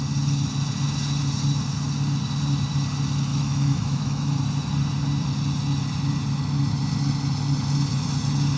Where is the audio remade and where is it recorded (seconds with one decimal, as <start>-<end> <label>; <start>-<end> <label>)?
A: 0.0-3.3 recorded; 3.3-4.4 remade; 4.4-8.6 recorded